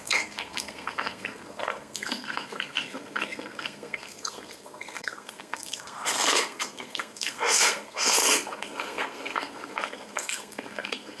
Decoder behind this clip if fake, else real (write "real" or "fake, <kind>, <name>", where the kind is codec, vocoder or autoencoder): fake, codec, SNAC